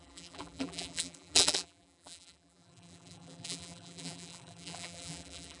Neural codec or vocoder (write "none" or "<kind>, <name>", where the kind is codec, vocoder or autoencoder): vocoder, BigVGAN v2